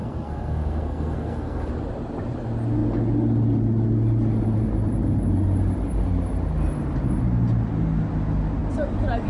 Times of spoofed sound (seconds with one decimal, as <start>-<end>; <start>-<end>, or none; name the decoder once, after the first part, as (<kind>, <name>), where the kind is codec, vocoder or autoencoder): 0.0-1.7 (codec, SNAC)